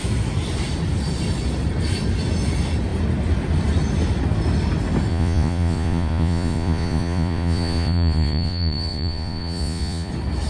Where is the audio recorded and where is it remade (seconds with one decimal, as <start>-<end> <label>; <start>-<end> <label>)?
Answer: 0.0-5.1 recorded; 5.1-10.1 remade; 10.1-10.5 recorded